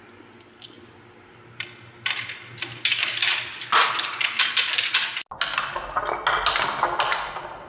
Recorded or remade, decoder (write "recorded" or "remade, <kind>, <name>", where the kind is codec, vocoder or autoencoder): recorded